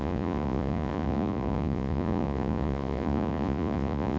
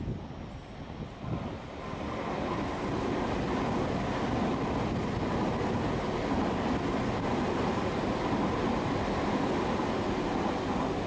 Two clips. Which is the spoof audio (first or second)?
first